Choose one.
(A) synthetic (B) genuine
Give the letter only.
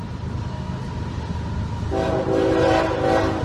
B